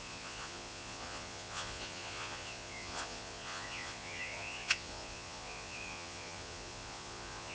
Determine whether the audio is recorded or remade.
remade